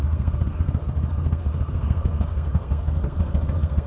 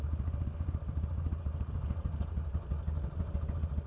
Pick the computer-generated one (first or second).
first